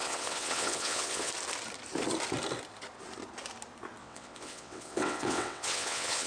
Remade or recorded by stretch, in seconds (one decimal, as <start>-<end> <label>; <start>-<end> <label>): 0.0-1.3 remade; 1.3-4.0 recorded; 4.0-6.3 remade